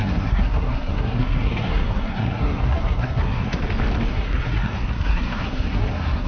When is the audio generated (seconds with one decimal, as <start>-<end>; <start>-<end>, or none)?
0.0-3.6; 4.1-6.3